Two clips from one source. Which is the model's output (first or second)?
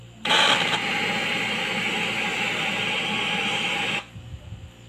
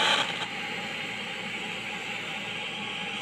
second